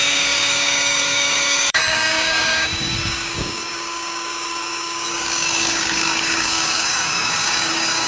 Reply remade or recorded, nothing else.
remade